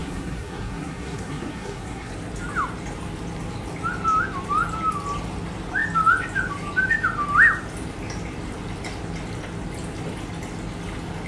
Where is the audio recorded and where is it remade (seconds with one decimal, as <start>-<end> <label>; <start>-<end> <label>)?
0.0-2.1 remade; 2.1-11.3 recorded

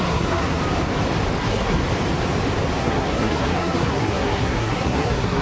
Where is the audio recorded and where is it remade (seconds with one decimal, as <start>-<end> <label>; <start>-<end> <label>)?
0.0-0.6 remade; 0.6-1.4 recorded; 1.4-1.8 remade; 1.8-2.8 recorded; 2.8-5.4 remade

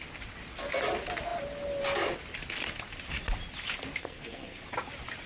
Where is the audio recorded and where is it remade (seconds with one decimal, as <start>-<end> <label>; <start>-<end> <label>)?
0.0-4.0 recorded; 4.0-4.6 remade; 4.6-5.3 recorded